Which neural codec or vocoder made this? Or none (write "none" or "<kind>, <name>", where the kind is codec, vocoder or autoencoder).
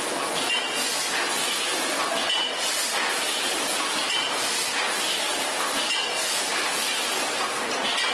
none